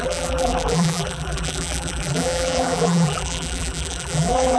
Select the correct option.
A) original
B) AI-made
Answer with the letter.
B